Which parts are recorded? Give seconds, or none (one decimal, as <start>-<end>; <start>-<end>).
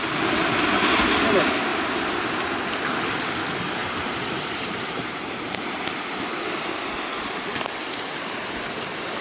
0.0-3.8; 6.0-9.2